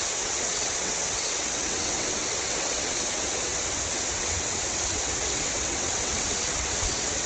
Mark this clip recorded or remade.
remade